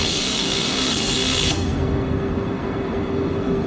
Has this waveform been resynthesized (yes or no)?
yes